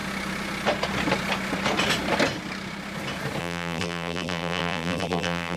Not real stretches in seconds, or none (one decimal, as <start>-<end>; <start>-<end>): 3.4-5.6